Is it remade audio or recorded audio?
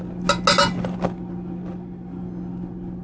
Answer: recorded